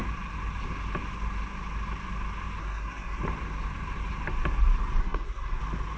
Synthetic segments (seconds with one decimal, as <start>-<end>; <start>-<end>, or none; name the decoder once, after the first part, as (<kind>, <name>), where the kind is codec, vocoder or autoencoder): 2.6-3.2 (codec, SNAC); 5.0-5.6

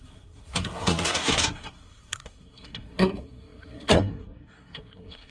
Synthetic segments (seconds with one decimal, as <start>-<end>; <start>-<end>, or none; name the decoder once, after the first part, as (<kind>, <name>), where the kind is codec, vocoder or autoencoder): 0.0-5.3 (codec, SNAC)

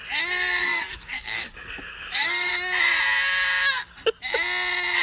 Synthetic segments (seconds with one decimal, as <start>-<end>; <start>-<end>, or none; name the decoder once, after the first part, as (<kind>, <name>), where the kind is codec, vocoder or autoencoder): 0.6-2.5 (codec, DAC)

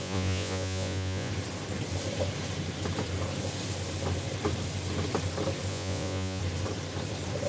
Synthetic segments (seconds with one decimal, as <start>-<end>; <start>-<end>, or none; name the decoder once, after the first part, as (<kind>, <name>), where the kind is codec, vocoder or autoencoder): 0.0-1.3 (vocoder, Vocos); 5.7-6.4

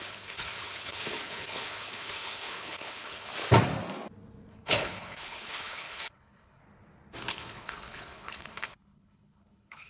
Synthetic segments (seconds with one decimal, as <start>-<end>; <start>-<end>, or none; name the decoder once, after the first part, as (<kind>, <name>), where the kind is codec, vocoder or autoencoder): 0.0-3.3 (codec, HILCodec); 4.5-6.6; 7.3-9.9

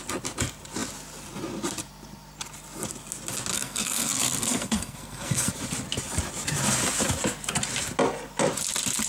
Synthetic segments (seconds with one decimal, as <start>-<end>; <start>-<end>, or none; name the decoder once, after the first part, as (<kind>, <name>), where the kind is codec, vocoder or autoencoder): 3.5-5.5 (codec, SNAC)

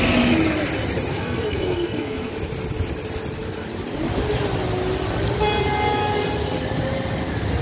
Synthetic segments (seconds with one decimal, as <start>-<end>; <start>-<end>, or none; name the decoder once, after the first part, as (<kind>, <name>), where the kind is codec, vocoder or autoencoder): 1.1-2.3 (codec, SNAC)